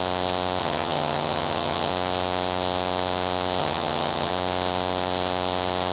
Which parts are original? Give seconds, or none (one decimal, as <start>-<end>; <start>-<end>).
0.0-0.6; 1.9-3.6; 4.3-5.9